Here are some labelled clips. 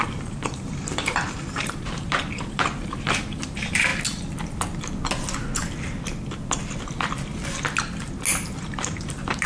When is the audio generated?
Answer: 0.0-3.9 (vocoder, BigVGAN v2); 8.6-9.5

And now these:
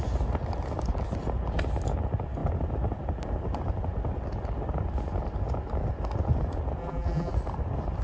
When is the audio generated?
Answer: 6.8-7.3 (vocoder, BigVGAN v2)

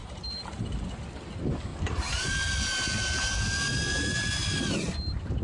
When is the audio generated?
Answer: 0.0-0.8 (vocoder, BigVGAN v2)